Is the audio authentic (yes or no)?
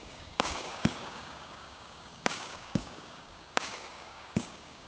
no